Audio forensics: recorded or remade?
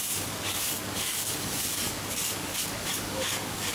remade